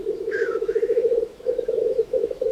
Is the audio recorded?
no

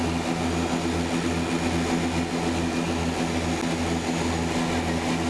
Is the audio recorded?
yes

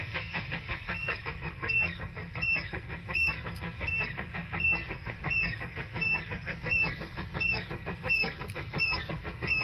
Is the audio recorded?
no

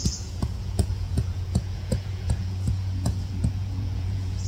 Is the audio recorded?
no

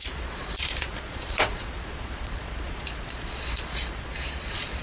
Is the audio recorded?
no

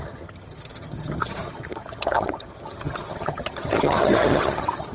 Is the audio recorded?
no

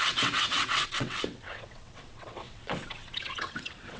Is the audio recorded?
no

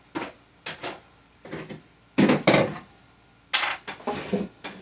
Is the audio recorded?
yes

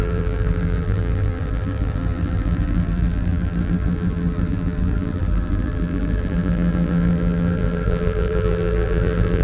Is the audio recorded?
no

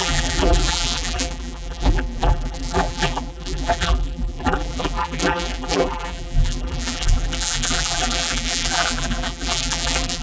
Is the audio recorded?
no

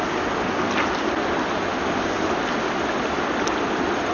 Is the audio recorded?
yes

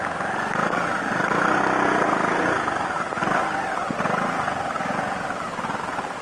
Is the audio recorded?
yes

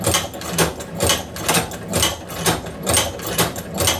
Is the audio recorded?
yes